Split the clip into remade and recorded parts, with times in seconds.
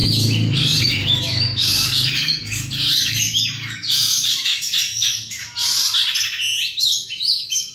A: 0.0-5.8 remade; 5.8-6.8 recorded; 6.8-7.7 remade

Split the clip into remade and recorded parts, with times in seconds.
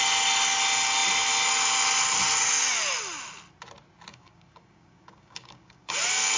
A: 0.0-4.1 recorded; 4.1-5.9 remade; 5.9-6.4 recorded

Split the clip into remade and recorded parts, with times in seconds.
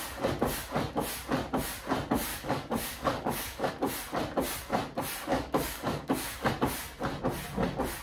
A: 0.0-2.3 recorded; 2.3-3.7 remade; 3.7-5.3 recorded; 5.3-6.5 remade; 6.5-8.0 recorded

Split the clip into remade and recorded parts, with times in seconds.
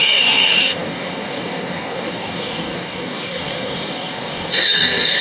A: 0.0-5.2 remade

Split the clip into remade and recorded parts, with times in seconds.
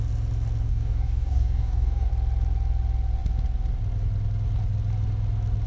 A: 0.0-0.7 recorded; 0.7-2.1 remade; 2.1-5.7 recorded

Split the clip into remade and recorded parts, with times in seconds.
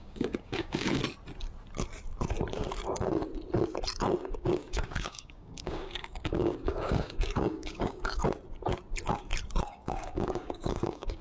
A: 0.0-1.0 remade; 1.0-4.3 recorded; 4.3-8.2 remade; 8.2-9.7 recorded; 9.7-11.2 remade